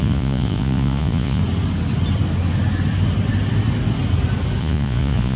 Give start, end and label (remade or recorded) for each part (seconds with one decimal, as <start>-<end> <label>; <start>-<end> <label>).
0.0-1.4 remade; 1.4-4.6 recorded; 4.6-5.4 remade